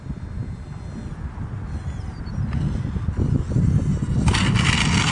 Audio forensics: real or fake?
real